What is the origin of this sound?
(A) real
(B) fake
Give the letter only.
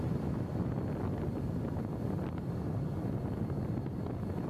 A